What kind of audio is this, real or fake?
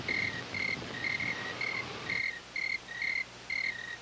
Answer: real